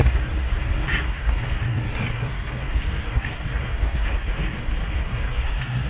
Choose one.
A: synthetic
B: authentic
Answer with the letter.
A